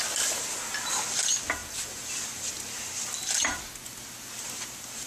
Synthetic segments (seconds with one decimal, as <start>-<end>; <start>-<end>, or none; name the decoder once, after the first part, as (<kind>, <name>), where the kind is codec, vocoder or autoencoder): none